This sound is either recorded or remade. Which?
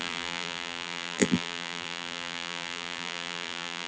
remade